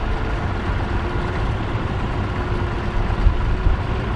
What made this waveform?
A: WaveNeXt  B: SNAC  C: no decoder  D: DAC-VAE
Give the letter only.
C